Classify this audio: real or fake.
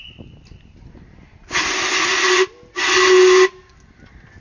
real